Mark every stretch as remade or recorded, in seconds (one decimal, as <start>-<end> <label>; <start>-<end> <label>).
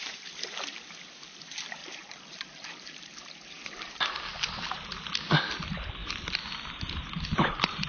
0.0-7.9 recorded